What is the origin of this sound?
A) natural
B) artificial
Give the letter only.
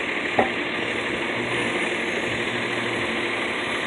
A